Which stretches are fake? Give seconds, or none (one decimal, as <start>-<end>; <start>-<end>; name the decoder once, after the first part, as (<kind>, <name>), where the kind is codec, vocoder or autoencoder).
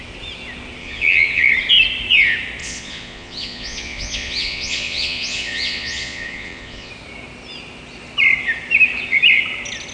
0.8-1.5 (vocoder, Vocos); 2.6-6.9